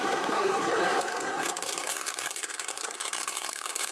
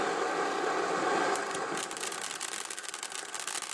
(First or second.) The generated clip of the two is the first